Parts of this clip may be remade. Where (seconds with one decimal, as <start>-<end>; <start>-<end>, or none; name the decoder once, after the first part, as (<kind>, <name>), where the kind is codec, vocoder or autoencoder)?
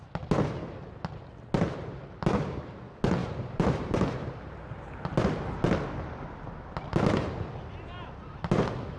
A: 3.2-4.4 (vocoder, BigVGAN v2)